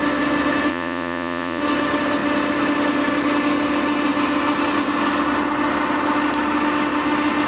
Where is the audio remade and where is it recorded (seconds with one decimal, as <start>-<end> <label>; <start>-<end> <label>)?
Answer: 0.0-0.7 recorded; 0.7-1.6 remade; 1.6-7.5 recorded